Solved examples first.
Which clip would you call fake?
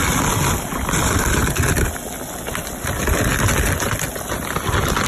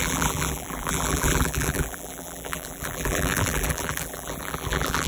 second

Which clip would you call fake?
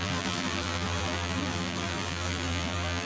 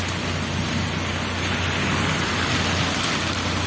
first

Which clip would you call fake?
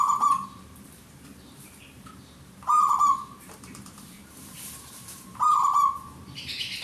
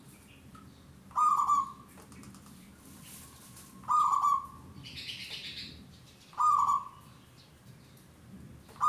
first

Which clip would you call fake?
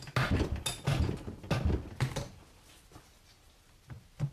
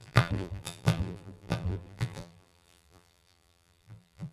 second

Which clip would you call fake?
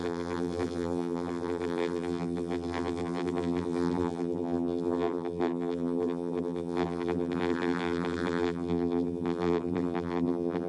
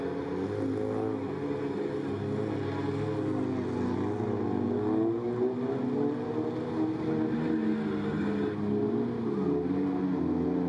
first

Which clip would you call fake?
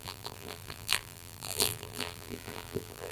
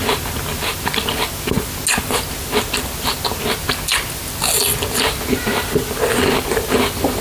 first